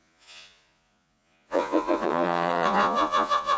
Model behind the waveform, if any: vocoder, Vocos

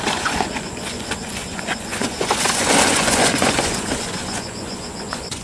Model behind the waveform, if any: vocoder, Vocos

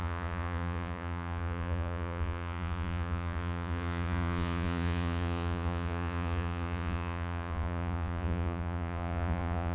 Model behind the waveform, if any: vocoder, Vocos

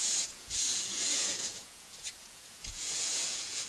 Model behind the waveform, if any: vocoder, Vocos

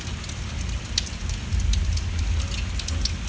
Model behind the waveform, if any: none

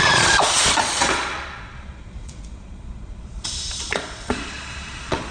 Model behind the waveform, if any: vocoder, Vocos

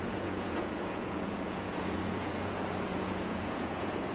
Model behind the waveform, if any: vocoder, Vocos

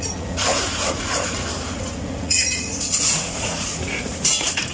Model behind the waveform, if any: vocoder, Vocos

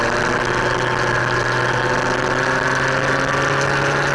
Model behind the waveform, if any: none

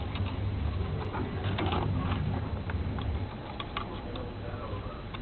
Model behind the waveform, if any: none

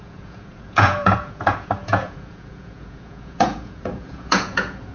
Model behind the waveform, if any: vocoder, Vocos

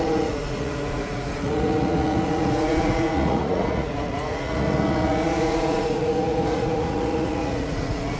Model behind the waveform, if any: vocoder, Vocos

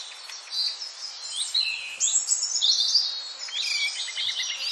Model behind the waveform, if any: none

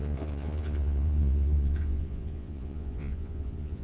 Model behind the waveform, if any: vocoder, Vocos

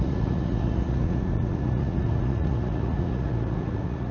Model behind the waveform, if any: vocoder, Vocos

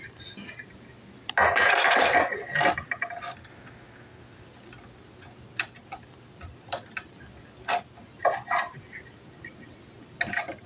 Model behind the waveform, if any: none